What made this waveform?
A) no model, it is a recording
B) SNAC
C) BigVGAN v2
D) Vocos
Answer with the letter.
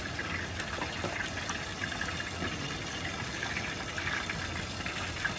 A